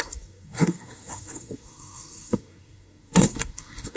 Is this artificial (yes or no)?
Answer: yes